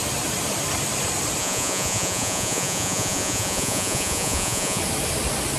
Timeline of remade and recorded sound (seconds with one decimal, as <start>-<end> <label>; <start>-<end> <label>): 0.0-1.4 recorded; 1.4-4.8 remade; 4.8-5.6 recorded